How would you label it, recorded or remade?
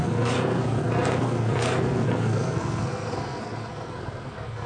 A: remade